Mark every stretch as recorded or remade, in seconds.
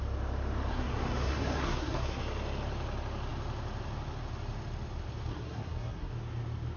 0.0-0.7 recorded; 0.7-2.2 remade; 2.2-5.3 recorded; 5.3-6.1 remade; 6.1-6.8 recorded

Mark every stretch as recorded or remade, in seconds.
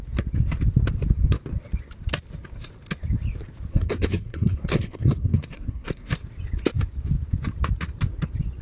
0.0-3.7 recorded; 3.7-6.1 remade; 6.1-8.6 recorded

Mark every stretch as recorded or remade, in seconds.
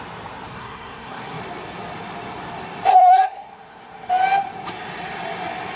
0.0-0.5 recorded; 0.5-1.4 remade; 1.4-2.9 recorded; 2.9-4.1 remade; 4.1-5.8 recorded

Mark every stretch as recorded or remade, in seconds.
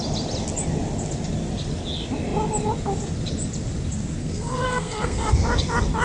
0.0-4.2 recorded; 4.2-5.3 remade; 5.3-6.0 recorded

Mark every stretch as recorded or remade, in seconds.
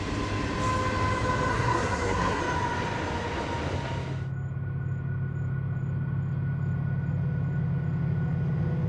0.0-1.5 recorded; 1.5-2.4 remade; 2.4-8.9 recorded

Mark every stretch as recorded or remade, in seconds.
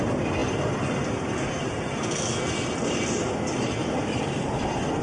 0.0-5.0 recorded